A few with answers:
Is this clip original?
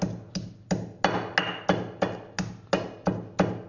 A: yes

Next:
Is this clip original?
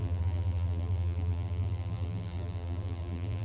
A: no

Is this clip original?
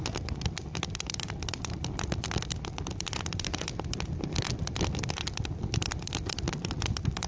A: no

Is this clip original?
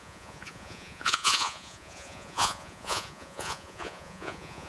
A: no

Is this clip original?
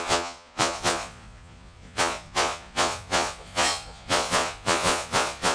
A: no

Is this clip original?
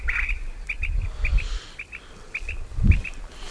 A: yes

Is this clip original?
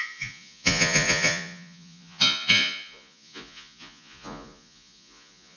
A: no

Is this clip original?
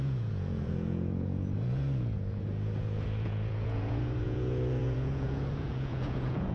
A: no